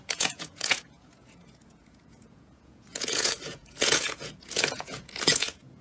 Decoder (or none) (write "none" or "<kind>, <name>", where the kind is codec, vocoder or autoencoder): vocoder, Vocos